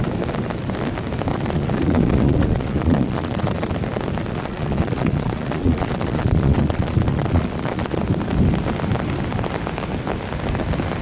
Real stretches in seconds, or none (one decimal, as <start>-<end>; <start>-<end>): 0.0-1.3; 3.7-4.2; 8.0-11.0